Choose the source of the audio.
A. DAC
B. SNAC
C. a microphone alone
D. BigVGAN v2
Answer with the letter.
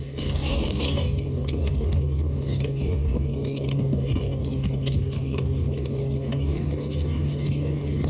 A